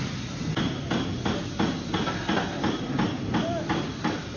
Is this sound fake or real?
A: real